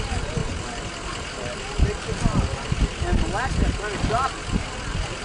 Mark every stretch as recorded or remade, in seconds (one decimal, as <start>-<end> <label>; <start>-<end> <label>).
0.0-5.2 recorded